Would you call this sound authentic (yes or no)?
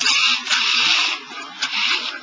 yes